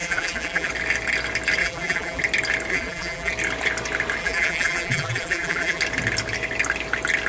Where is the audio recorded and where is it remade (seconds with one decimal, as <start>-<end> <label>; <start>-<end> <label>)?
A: 0.0-0.7 remade; 0.7-1.6 recorded; 1.6-2.2 remade; 2.2-2.7 recorded; 2.7-3.3 remade; 3.3-4.2 recorded; 4.2-5.8 remade; 5.8-7.3 recorded